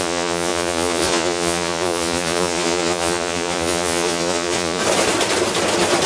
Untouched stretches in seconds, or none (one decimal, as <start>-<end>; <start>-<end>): 4.8-6.1